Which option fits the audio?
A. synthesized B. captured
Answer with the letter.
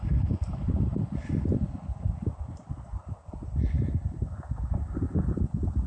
B